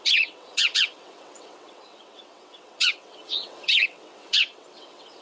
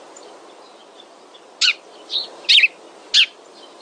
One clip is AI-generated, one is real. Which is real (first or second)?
second